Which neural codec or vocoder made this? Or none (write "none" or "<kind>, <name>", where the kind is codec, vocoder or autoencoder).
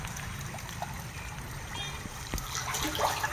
none